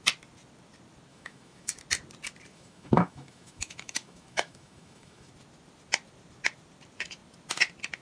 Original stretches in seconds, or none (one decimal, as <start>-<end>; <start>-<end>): 0.0-1.1; 1.8-2.5; 5.3-8.0